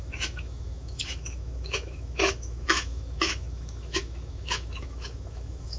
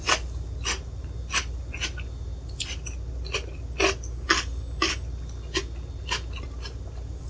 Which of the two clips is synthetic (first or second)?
first